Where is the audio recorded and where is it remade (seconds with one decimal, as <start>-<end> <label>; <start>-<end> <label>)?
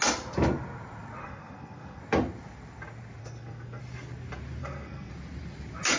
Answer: 0.0-1.2 recorded; 1.2-2.0 remade; 2.0-3.2 recorded; 3.2-3.8 remade; 3.8-4.6 recorded; 4.6-5.1 remade; 5.1-6.0 recorded